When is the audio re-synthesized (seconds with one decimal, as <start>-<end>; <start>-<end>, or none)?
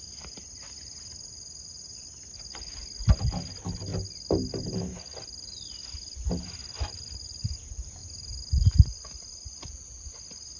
none